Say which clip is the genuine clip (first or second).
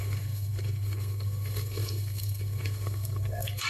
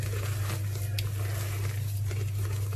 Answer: second